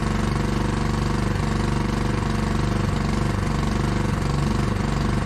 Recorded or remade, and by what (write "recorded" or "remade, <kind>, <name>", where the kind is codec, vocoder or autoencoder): recorded